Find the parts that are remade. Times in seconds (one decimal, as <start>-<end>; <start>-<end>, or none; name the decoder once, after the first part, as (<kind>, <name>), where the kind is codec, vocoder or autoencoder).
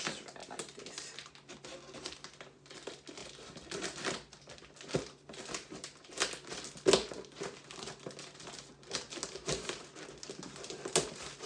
none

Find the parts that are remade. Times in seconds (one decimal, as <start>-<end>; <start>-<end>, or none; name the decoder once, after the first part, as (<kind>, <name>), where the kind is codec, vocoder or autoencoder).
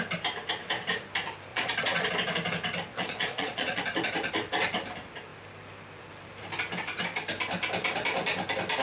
1.5-2.1 (vocoder, Vocos); 2.9-3.8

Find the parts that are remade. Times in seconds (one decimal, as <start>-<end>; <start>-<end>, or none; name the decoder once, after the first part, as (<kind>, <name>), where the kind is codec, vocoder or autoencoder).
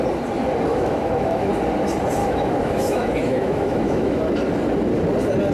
0.7-1.5 (autoencoder, DAC-VAE); 2.2-4.2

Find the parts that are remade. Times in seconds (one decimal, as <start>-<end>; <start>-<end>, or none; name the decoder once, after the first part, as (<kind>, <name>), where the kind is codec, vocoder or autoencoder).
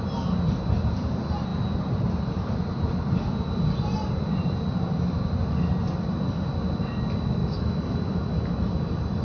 7.4-8.7 (autoencoder, DAC-VAE)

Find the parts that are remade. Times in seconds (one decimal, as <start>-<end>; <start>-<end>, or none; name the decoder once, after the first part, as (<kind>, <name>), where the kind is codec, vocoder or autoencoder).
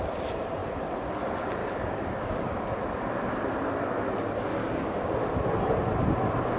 1.6-2.6 (codec, DAC); 4.6-5.1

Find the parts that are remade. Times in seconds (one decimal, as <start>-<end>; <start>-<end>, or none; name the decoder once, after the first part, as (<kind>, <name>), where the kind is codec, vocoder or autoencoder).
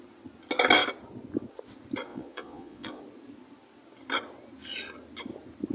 2.1-3.0 (vocoder, Vocos)